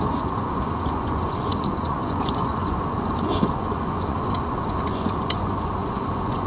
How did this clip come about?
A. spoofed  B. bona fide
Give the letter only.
A